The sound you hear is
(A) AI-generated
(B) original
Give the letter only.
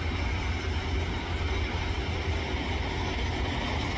B